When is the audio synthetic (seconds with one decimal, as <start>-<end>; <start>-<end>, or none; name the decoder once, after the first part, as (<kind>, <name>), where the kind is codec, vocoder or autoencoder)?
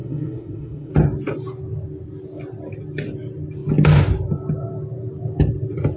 0.0-0.9 (codec, SNAC)